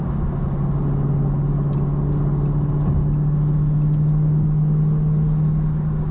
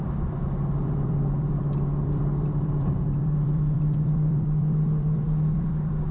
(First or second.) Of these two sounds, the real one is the first